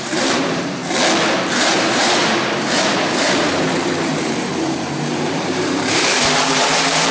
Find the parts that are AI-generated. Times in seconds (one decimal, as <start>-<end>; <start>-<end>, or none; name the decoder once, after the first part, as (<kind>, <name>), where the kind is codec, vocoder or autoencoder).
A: 0.0-0.8 (vocoder, BigVGAN v2); 1.5-7.1